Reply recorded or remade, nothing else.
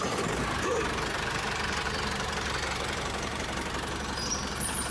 remade